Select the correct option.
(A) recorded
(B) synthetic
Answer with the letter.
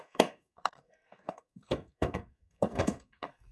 B